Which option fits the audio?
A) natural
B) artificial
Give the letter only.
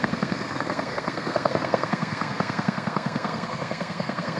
B